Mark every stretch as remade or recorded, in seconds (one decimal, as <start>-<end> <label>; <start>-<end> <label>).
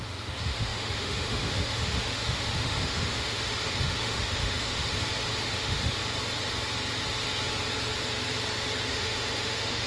0.0-4.9 remade; 4.9-5.4 recorded; 5.4-6.0 remade; 6.0-8.9 recorded; 8.9-9.9 remade